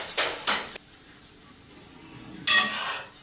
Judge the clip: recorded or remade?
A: recorded